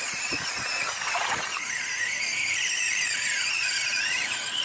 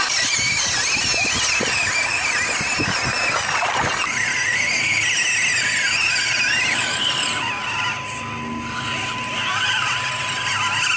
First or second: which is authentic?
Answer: second